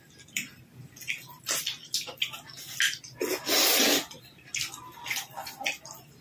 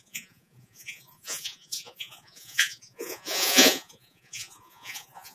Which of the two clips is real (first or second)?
first